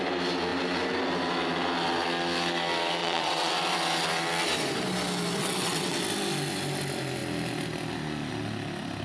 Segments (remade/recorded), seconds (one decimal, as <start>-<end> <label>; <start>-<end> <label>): 0.0-3.0 recorded; 3.0-3.5 remade; 3.5-5.4 recorded; 5.4-6.0 remade; 6.0-9.0 recorded